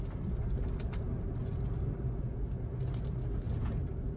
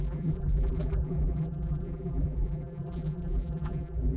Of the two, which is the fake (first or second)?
second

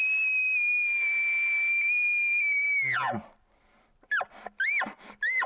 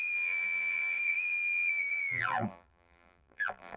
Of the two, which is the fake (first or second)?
second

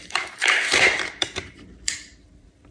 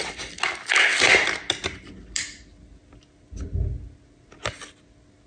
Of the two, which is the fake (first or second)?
first